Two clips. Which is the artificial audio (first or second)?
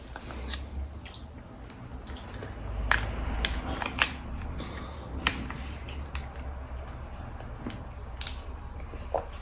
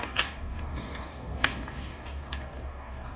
second